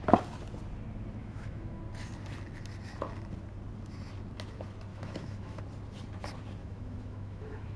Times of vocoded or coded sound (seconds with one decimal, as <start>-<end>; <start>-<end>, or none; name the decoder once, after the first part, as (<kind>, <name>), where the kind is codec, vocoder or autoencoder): 1.2-1.8 (autoencoder, DAC-VAE); 4.9-5.6; 6.6-7.8